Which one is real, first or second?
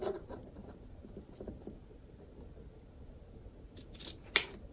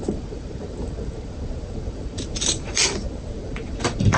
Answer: first